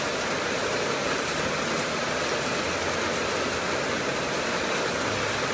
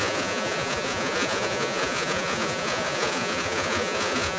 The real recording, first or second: first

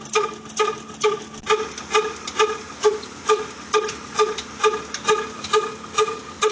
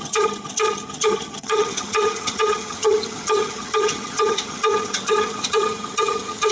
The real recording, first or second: first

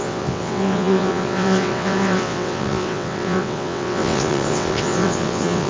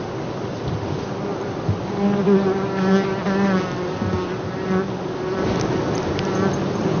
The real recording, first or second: second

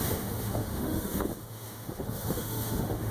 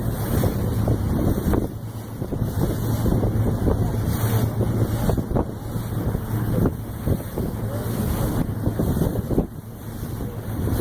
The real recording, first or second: second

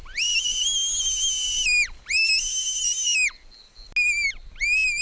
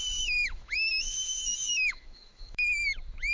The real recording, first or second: first